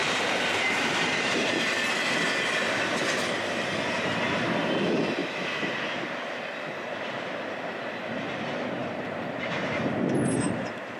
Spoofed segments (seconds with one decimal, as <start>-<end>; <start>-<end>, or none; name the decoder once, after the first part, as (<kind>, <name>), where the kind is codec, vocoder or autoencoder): 0.0-2.0 (vocoder, BigVGAN v2); 5.2-6.5